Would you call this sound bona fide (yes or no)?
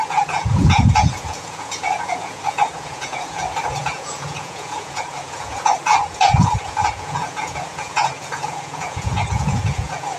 no